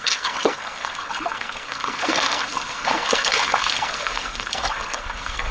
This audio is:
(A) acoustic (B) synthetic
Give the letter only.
B